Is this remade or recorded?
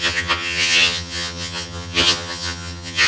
remade